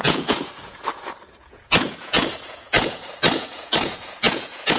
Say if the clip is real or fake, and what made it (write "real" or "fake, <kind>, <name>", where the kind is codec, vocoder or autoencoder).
fake, vocoder, Vocos